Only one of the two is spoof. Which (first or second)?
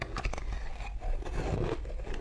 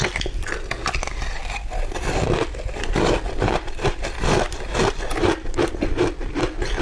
second